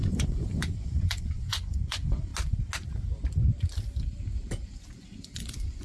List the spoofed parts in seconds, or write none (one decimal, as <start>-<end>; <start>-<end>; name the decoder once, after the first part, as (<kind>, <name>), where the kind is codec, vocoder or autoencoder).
0.0-2.3 (vocoder, Vocos); 4.7-5.8